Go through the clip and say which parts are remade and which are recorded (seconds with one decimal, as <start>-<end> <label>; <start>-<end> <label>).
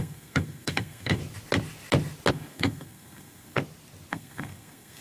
0.0-1.2 remade; 1.2-2.3 recorded; 2.3-3.6 remade; 3.6-4.1 recorded; 4.1-5.0 remade